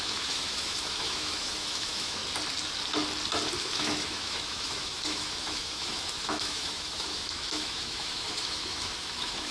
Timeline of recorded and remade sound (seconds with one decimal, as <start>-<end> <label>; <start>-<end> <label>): 0.0-2.2 remade; 2.2-3.6 recorded; 3.6-9.5 remade